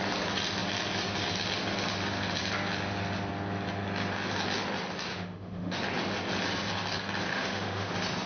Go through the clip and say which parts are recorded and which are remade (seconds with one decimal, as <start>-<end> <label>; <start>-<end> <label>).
0.0-5.1 recorded; 5.1-5.8 remade; 5.8-7.3 recorded; 7.3-7.9 remade; 7.9-8.3 recorded